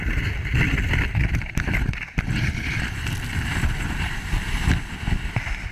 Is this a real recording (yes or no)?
yes